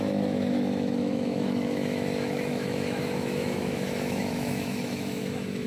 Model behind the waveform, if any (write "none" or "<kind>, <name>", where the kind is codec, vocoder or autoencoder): autoencoder, DAC-VAE